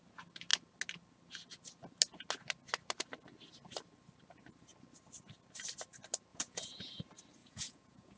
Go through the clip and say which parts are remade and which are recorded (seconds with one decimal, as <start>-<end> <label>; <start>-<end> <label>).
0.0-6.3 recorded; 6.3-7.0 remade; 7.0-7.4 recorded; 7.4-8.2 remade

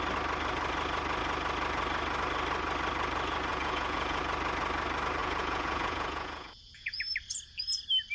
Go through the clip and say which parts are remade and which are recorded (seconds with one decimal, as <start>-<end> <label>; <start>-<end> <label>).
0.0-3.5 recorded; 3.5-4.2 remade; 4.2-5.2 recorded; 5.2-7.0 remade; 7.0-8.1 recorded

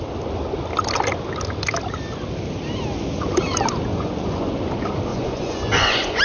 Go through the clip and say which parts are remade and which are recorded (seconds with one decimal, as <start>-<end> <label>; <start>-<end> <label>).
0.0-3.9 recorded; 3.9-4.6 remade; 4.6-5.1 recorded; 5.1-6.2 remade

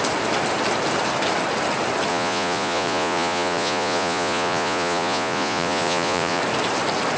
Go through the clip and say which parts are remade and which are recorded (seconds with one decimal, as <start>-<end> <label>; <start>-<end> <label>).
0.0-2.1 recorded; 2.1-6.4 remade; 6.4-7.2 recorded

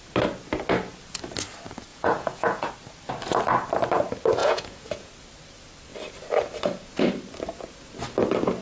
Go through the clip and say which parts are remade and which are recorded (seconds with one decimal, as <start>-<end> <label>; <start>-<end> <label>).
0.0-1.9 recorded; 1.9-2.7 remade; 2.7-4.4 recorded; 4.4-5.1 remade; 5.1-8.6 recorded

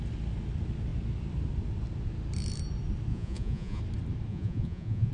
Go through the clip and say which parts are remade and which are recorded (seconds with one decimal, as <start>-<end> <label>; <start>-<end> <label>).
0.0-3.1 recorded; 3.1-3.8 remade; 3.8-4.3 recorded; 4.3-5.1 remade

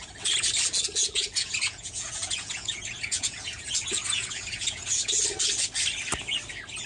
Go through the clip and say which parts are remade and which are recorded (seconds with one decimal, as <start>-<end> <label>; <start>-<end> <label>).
0.0-1.0 recorded; 1.0-5.1 remade; 5.1-6.9 recorded